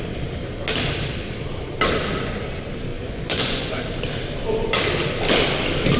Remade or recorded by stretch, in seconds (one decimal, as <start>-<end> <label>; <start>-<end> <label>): 0.0-2.9 recorded; 2.9-3.7 remade; 3.7-6.0 recorded